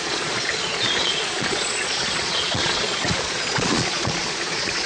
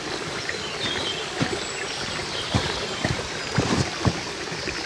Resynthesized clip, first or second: first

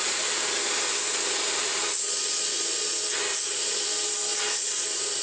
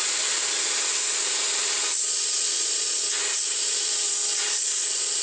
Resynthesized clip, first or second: second